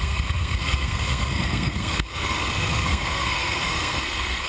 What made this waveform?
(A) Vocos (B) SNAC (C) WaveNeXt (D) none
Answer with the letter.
B